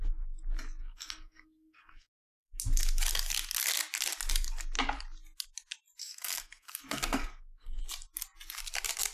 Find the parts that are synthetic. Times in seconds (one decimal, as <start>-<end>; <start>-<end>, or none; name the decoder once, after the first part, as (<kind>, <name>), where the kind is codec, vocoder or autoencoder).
0.8-2.6 (codec, SNAC); 6.0-7.8